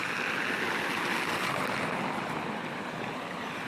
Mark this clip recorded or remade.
recorded